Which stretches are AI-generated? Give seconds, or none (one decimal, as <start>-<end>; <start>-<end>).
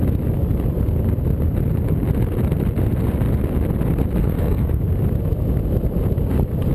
4.2-4.8